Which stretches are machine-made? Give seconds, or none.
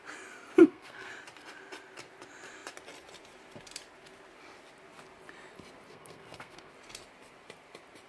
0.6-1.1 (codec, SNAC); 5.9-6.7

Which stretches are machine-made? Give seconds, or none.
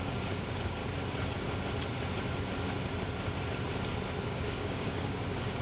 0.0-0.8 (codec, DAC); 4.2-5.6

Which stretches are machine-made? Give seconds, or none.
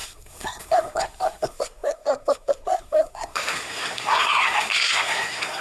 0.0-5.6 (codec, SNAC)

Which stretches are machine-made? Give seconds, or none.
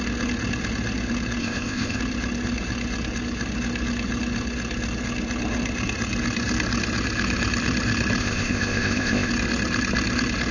1.4-2.0 (codec, ZipCodec); 8.2-9.3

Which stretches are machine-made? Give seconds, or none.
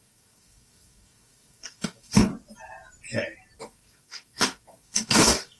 0.0-2.3 (codec, DAC); 3.6-5.6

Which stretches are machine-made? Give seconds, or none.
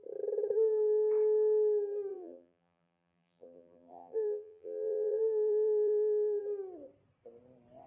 2.1-6.4 (vocoder, BigVGAN v2)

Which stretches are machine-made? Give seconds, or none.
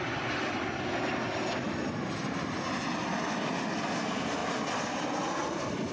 none